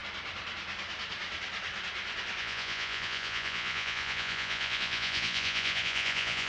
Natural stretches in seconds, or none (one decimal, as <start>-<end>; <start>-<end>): 0.0-2.4